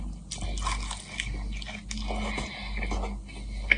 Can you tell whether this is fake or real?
real